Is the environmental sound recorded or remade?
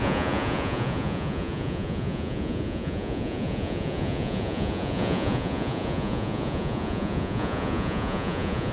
remade